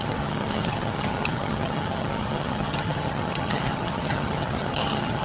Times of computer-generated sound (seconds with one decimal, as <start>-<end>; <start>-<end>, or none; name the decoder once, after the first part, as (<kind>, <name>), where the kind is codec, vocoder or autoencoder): 0.0-5.2 (vocoder, HiFi-GAN)